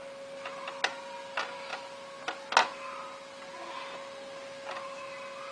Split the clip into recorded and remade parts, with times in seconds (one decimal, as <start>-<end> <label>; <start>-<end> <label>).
0.0-5.5 recorded